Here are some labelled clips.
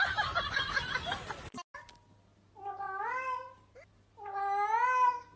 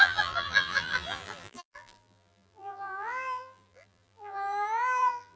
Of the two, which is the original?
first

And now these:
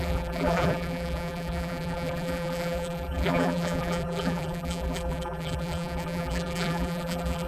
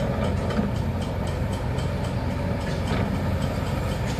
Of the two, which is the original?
second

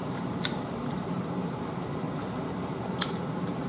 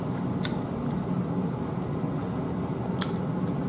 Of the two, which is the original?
second